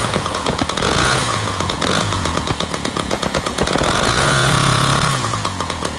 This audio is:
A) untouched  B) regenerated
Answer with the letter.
B